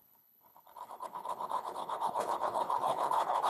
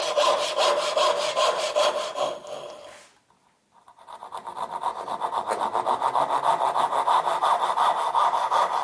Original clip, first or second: second